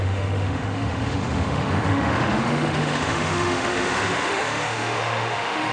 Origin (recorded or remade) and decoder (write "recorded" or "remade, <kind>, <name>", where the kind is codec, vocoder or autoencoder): remade, autoencoder, DAC-VAE